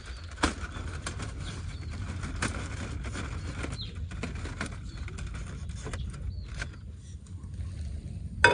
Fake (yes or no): no